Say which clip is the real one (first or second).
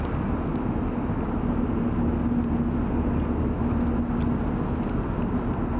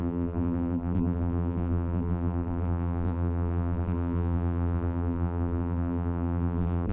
first